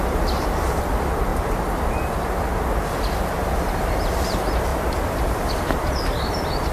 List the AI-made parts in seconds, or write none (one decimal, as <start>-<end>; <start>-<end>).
0.0-1.3; 3.0-6.7